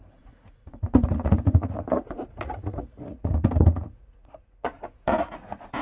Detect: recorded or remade remade